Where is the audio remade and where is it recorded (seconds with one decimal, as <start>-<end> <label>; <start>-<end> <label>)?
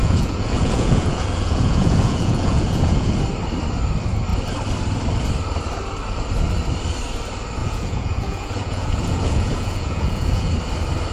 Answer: 0.0-3.2 remade; 3.2-7.6 recorded; 7.6-10.5 remade; 10.5-11.1 recorded